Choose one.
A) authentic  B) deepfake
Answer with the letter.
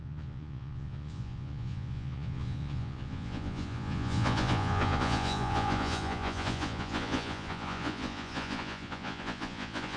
B